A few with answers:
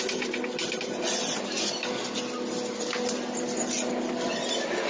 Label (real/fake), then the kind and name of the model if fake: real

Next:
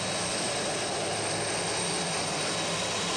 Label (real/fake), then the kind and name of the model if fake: real